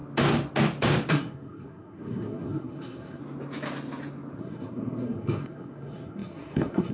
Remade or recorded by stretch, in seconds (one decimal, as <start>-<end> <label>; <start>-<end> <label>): 0.0-1.1 recorded; 1.1-3.2 remade; 3.2-4.4 recorded; 4.4-6.9 remade